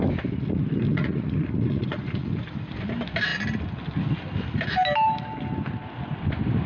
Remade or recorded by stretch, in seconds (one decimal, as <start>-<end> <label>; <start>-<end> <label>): 0.0-0.9 recorded; 0.9-2.3 remade; 2.3-6.7 recorded